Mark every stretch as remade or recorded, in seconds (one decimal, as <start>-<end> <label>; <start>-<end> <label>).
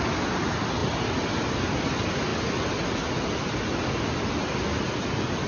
0.0-5.5 recorded